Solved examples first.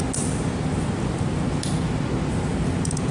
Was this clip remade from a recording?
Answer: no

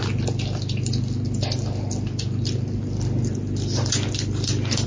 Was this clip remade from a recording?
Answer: no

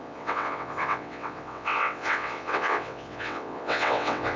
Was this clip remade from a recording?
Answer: yes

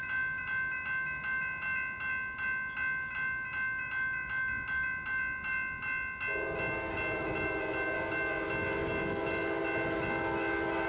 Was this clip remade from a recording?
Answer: no